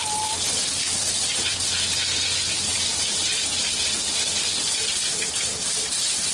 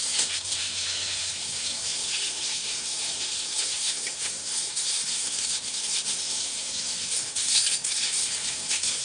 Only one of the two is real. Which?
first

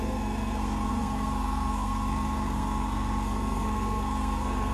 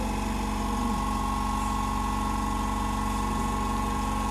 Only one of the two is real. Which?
second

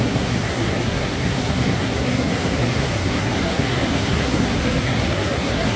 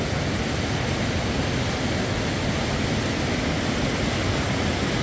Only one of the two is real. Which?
second